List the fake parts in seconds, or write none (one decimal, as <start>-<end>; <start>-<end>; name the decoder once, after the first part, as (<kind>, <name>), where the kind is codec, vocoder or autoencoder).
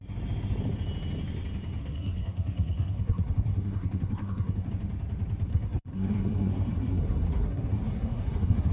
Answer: 1.8-4.7 (codec, SNAC); 5.5-8.7